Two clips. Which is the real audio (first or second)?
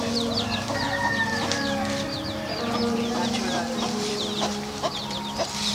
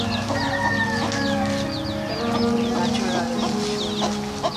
second